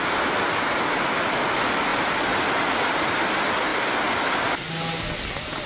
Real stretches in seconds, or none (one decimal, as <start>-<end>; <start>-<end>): 0.0-5.7